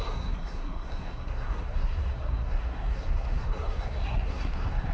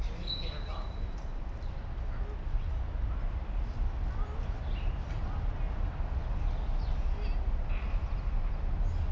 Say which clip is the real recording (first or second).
second